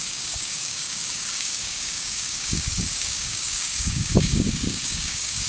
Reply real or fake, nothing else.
fake